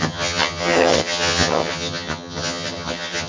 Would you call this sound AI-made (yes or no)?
yes